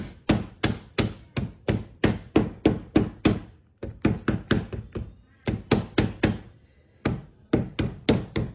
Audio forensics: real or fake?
real